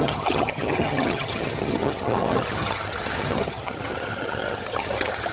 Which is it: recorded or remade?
remade